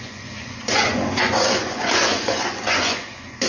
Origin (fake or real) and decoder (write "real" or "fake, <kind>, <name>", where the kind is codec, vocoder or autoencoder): fake, vocoder, Vocos